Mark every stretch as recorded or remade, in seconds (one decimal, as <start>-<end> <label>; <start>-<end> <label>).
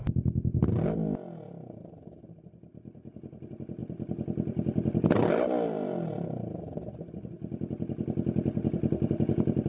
0.0-9.7 recorded